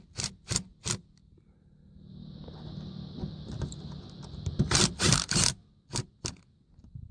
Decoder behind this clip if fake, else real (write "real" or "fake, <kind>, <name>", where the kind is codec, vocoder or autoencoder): real